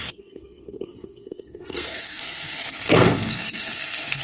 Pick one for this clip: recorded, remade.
remade